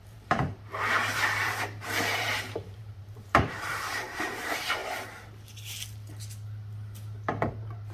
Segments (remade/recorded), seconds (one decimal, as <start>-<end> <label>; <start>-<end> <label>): 0.0-4.8 remade; 4.8-7.5 recorded; 7.5-7.9 remade